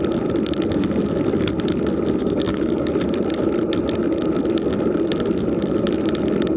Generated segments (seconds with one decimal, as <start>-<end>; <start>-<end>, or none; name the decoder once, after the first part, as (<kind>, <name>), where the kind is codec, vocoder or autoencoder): 2.2-2.9 (codec, DAC)